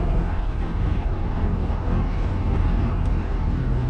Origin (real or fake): fake